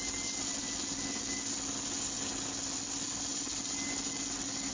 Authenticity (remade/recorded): recorded